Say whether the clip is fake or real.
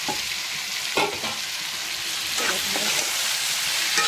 real